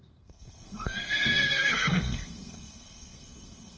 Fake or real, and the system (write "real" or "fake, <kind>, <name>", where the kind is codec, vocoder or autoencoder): fake, codec, SNAC